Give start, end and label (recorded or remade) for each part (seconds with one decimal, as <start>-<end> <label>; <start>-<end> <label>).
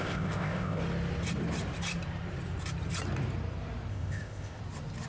0.0-0.8 remade; 0.8-3.9 recorded; 3.9-4.6 remade; 4.6-5.1 recorded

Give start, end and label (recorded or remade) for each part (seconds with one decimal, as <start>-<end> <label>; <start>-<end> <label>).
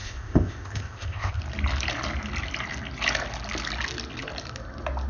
0.0-1.4 remade; 1.4-5.1 recorded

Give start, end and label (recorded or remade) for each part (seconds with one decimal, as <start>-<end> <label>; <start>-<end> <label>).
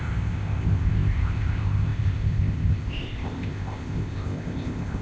0.0-5.0 remade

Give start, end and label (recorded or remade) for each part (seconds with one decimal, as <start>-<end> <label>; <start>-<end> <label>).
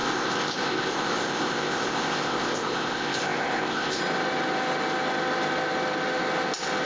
0.0-4.0 remade; 4.0-6.9 recorded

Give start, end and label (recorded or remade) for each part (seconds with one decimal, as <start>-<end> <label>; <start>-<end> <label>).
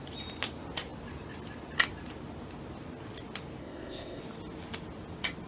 0.0-3.6 recorded; 3.6-4.2 remade; 4.2-5.5 recorded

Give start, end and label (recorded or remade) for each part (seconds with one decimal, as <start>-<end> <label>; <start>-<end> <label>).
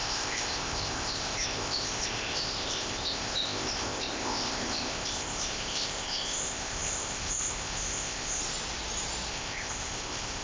0.0-8.4 remade; 8.4-9.3 recorded; 9.3-10.4 remade